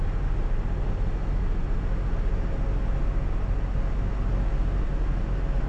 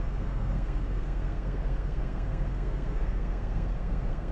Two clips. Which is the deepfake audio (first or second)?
second